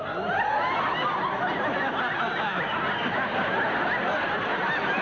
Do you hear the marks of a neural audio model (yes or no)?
yes